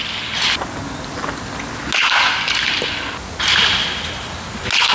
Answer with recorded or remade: recorded